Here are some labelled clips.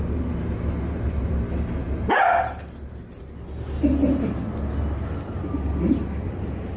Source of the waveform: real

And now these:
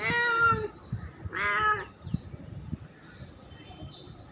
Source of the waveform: real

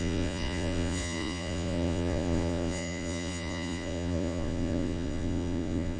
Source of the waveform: fake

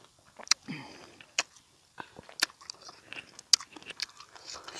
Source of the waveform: real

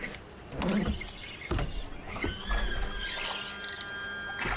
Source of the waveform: real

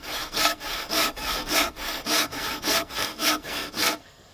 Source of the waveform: fake